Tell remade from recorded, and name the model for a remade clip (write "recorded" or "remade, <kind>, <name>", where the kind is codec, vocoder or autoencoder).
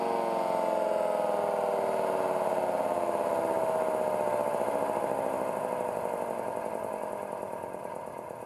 recorded